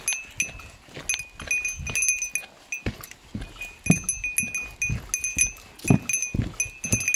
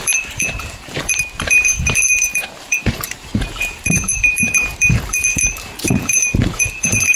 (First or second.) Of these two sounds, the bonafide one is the first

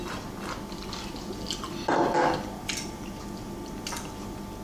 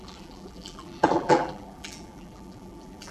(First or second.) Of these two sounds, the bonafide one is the first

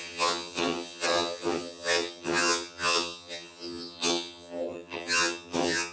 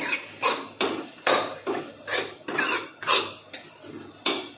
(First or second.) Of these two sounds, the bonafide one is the second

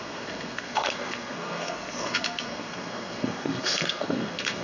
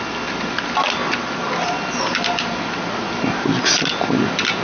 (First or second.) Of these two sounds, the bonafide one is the second